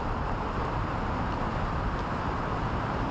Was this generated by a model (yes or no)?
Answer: no